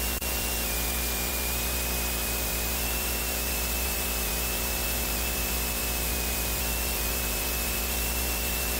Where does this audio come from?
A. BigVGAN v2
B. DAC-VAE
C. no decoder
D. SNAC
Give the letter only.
A